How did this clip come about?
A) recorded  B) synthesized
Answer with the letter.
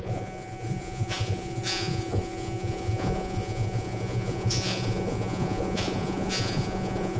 B